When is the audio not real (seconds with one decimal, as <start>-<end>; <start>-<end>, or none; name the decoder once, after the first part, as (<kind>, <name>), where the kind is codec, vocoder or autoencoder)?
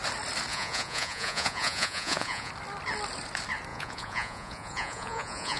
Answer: 0.5-2.5 (vocoder, Vocos); 3.7-5.6